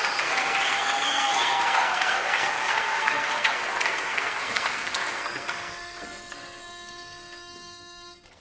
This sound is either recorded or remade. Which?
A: remade